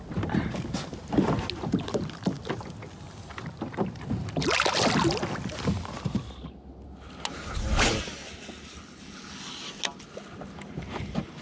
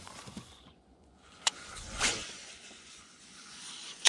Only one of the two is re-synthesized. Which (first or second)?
second